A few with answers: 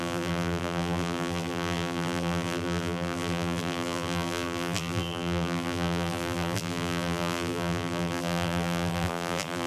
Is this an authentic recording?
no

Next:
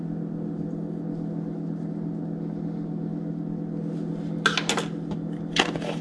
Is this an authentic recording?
yes